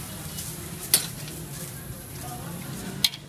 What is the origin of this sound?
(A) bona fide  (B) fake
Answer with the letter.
A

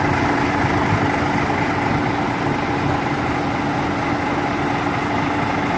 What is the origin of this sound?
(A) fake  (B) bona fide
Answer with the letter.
B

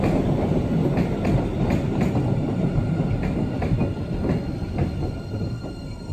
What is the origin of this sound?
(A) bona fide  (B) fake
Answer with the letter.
A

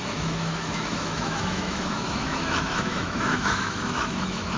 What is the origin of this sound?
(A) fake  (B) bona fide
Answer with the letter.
A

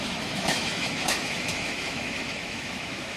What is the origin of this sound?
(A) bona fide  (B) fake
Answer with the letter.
B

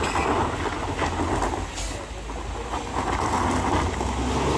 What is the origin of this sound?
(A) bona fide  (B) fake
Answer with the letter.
A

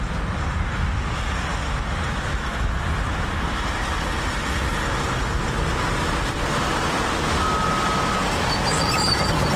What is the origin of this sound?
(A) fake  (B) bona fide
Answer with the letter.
B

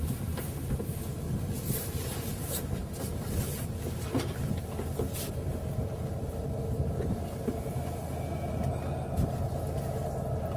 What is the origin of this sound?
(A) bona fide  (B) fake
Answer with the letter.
A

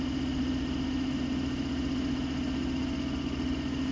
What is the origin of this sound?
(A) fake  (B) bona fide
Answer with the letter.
B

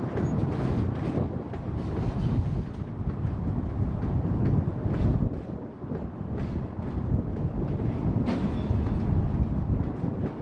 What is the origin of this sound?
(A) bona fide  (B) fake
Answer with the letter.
A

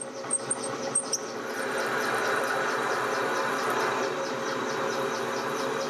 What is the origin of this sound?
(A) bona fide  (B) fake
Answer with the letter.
B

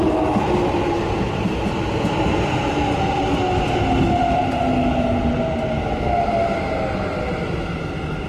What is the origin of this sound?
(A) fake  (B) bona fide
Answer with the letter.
B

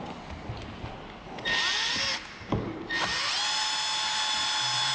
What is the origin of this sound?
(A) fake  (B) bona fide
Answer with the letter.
B